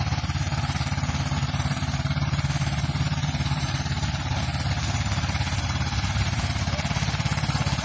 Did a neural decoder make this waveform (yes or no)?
yes